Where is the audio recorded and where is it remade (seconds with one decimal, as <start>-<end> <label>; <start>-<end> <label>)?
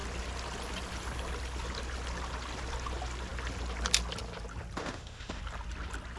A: 0.0-4.8 recorded; 4.8-5.4 remade; 5.4-6.2 recorded